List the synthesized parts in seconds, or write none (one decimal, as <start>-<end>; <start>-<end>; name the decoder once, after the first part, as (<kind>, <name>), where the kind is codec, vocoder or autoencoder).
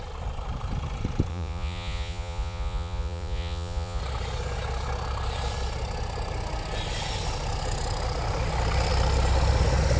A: 1.3-4.0 (vocoder, Vocos)